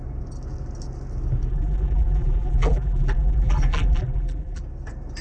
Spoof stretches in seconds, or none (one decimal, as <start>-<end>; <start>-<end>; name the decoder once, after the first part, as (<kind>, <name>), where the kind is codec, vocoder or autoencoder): 1.5-4.6 (vocoder, BigVGAN v2)